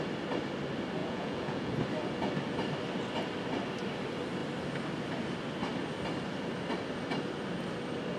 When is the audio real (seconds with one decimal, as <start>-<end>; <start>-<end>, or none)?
0.0-1.0; 1.7-8.2